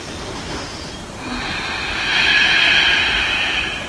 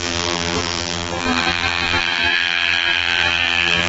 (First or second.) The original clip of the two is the first